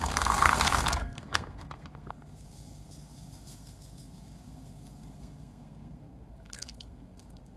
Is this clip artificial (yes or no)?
yes